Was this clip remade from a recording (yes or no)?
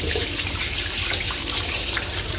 yes